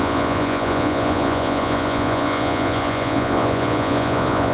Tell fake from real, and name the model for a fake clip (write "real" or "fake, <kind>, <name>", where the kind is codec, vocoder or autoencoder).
fake, vocoder, Vocos